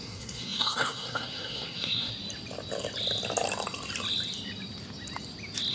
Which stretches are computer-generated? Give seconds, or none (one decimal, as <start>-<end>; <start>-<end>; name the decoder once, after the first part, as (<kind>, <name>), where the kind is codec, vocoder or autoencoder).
0.0-2.1 (codec, SNAC)